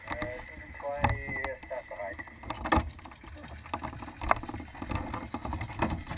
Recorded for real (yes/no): yes